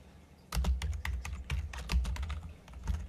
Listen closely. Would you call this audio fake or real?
real